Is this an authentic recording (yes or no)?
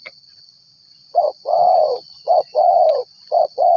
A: no